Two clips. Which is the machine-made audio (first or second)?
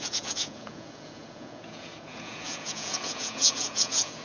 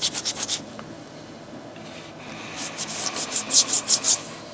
first